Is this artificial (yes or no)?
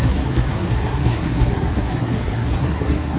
yes